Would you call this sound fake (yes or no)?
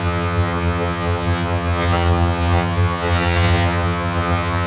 yes